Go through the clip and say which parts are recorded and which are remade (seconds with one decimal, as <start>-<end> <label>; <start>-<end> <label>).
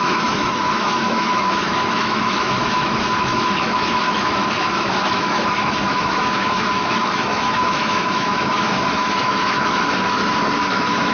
0.0-10.2 remade; 10.2-10.7 recorded; 10.7-11.1 remade